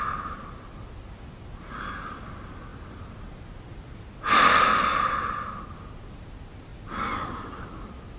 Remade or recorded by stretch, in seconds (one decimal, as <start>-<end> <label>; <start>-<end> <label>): 0.0-8.2 recorded